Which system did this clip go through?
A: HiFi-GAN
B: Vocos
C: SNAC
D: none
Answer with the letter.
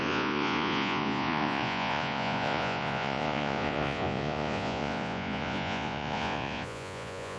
B